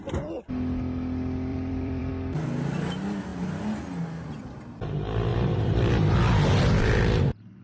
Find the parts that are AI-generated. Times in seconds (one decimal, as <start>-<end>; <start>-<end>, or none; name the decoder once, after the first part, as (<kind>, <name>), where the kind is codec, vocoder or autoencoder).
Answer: 1.5-2.1 (vocoder, BigVGAN v2); 5.3-5.9